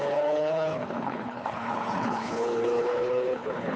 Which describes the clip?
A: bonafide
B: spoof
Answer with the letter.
B